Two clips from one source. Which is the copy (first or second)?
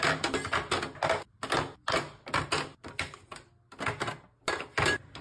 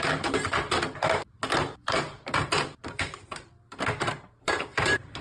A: second